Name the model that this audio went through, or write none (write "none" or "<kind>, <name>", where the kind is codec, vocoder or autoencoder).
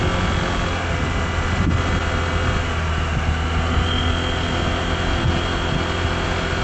none